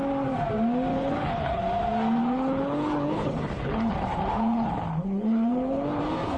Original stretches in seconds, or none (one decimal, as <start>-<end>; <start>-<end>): 0.0-0.9; 1.6-2.2; 6.0-6.4